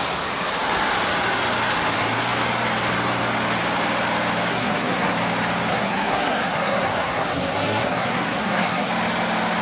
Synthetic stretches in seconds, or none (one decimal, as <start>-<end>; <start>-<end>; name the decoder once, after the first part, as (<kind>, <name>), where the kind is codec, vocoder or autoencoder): 4.5-5.1 (codec, SNAC); 5.7-8.9